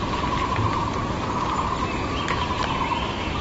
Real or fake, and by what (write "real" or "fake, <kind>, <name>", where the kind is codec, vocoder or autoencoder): real